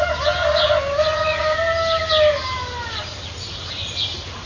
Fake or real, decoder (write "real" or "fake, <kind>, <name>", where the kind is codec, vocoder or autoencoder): real